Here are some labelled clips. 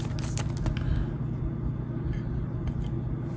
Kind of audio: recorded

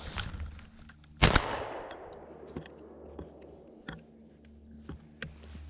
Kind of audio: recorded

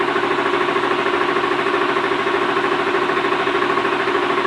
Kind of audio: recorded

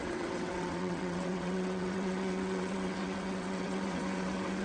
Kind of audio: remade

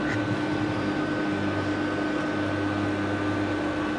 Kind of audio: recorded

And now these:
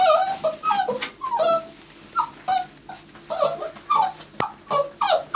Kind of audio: recorded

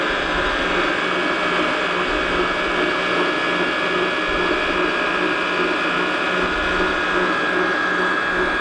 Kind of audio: recorded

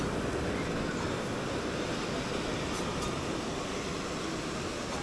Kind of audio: recorded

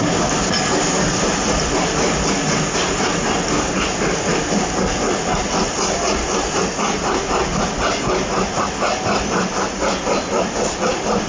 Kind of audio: recorded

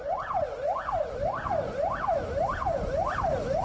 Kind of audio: recorded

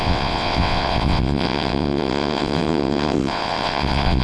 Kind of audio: remade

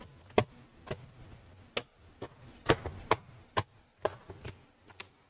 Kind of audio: recorded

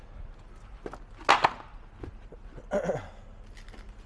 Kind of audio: recorded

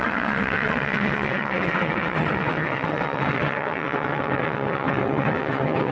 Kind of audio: remade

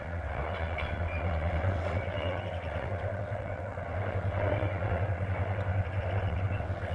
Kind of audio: remade